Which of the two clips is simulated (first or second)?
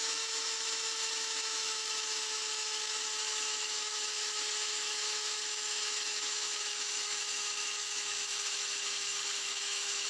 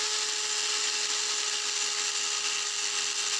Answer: first